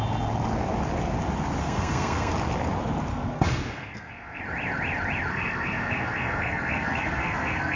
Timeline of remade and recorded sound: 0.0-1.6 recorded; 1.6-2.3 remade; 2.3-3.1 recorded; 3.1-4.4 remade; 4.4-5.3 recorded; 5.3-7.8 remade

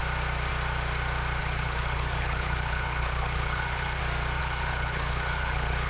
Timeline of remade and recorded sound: 0.0-1.4 recorded; 1.4-4.0 remade; 4.0-4.4 recorded; 4.4-5.9 remade